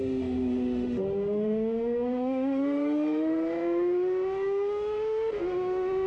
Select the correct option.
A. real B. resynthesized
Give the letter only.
B